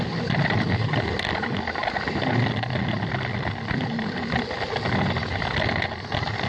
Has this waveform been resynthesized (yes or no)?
no